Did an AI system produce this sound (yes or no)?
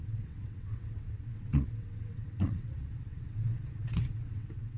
yes